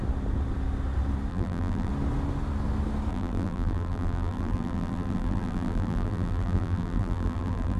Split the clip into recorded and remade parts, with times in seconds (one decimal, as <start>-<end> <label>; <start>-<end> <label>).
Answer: 0.0-1.3 recorded; 1.3-1.9 remade; 1.9-3.1 recorded; 3.1-7.8 remade